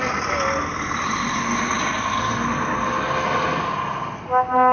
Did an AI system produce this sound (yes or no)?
no